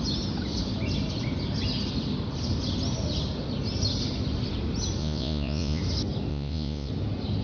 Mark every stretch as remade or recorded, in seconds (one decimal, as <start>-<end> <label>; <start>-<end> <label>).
0.0-5.0 recorded; 5.0-5.8 remade; 5.8-6.3 recorded; 6.3-6.9 remade; 6.9-7.4 recorded